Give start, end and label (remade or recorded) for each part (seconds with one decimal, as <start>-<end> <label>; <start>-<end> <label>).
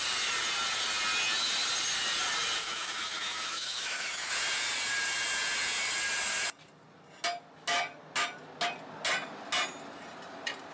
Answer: 0.0-2.6 recorded; 2.6-4.3 remade; 4.3-10.7 recorded